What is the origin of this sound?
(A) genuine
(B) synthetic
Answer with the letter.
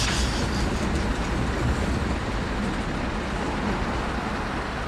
A